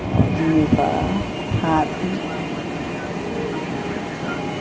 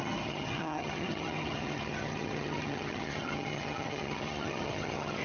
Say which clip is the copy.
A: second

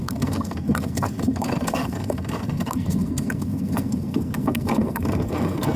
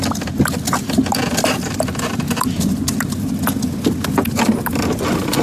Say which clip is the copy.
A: first